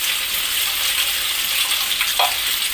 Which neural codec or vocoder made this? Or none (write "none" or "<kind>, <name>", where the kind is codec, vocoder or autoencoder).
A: none